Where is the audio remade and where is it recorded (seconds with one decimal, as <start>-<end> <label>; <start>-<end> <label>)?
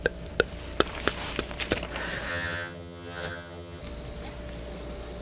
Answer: 0.0-2.3 recorded; 2.3-3.8 remade; 3.8-5.2 recorded